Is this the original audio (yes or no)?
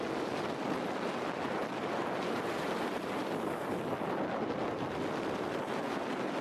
yes